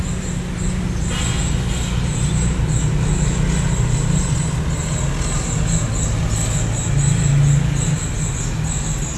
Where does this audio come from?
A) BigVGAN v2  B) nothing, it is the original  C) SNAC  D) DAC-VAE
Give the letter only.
B